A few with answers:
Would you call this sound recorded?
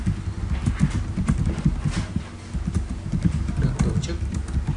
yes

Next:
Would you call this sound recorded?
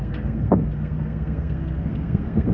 no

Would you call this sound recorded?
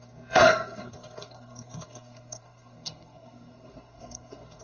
no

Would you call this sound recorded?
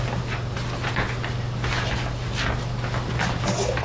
yes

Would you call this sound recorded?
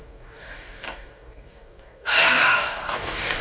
no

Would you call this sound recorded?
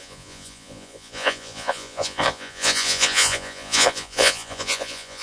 no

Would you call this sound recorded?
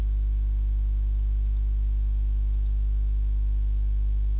yes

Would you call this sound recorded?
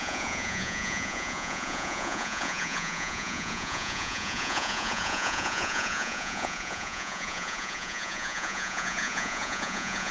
no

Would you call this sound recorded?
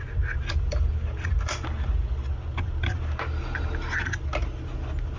yes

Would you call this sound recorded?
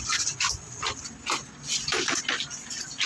yes